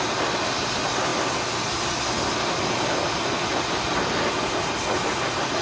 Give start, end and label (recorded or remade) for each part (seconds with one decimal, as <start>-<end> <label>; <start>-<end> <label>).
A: 0.0-5.6 recorded